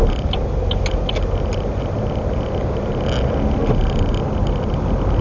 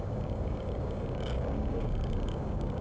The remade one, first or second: second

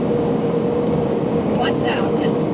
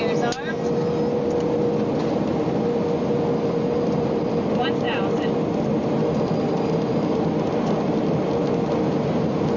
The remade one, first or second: first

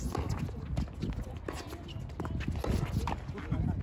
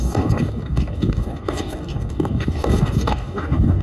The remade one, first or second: second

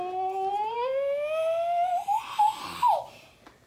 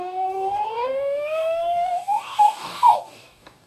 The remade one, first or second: second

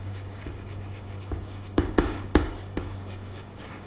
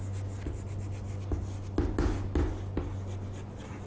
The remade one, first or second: first